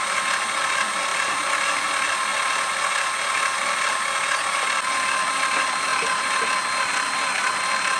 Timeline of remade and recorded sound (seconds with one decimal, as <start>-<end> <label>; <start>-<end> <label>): 0.0-1.1 recorded; 1.1-1.9 remade; 1.9-8.0 recorded